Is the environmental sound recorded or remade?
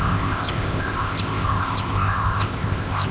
remade